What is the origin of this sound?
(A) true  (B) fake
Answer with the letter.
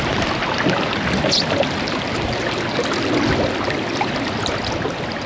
A